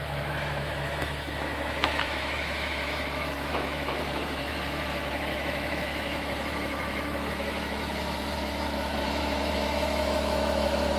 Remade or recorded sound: remade